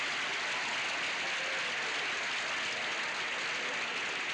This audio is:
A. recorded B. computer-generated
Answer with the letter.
A